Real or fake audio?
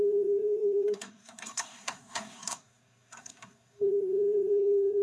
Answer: fake